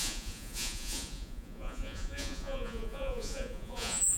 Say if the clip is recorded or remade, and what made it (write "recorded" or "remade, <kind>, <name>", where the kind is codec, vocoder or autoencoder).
remade, vocoder, Vocos